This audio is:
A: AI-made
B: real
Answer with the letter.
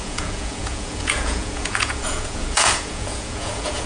A